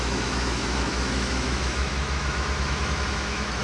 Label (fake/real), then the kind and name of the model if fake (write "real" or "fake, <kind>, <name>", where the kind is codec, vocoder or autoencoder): fake, autoencoder, DAC-VAE